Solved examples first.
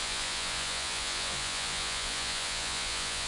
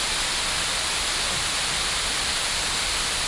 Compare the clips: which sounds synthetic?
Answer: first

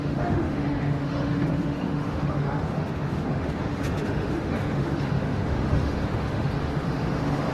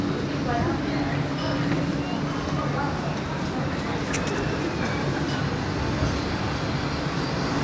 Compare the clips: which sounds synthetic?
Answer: first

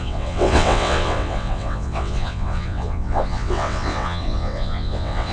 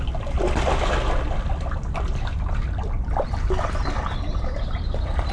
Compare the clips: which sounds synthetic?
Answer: first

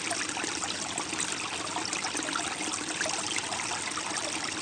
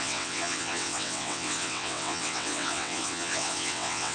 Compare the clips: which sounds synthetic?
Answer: second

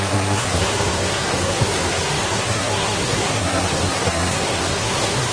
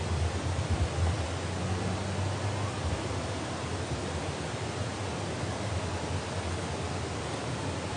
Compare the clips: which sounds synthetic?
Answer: first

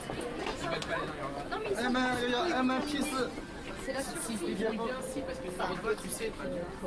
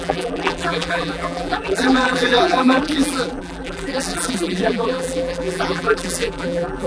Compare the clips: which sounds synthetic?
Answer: second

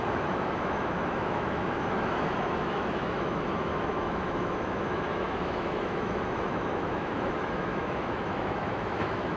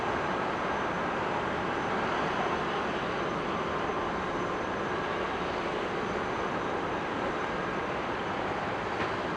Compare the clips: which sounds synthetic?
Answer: first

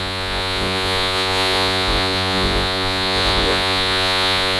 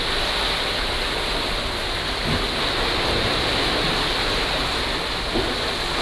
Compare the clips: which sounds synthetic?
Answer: first